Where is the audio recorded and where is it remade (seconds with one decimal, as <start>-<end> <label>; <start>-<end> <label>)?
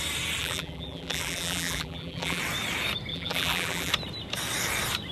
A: 0.0-0.4 recorded; 0.4-2.4 remade; 2.4-3.1 recorded; 3.1-3.9 remade; 3.9-5.1 recorded